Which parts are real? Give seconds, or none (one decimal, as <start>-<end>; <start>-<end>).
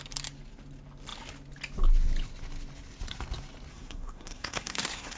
0.0-3.7